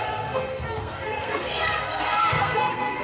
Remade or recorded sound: remade